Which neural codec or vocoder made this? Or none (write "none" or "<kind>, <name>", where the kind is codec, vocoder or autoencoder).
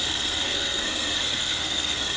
codec, SNAC